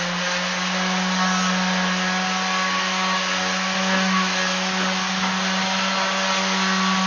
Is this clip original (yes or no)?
yes